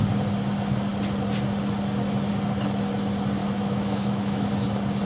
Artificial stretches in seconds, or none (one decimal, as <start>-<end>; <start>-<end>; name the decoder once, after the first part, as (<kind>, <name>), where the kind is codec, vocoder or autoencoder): 3.4-4.5 (autoencoder, DAC-VAE)